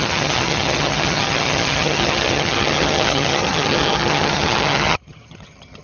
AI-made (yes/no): yes